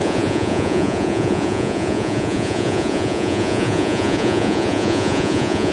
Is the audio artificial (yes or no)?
yes